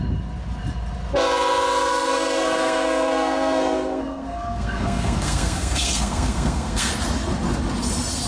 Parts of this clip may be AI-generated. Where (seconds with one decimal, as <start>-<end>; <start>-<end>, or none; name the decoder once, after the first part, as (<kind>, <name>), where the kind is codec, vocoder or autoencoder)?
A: 1.9-6.9 (codec, SNAC)